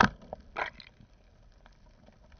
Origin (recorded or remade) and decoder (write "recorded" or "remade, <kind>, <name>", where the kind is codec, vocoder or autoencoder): recorded